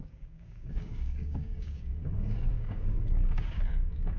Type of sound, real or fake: fake